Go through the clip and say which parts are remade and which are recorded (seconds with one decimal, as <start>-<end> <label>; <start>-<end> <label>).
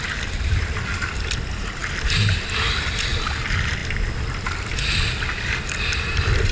0.0-6.5 recorded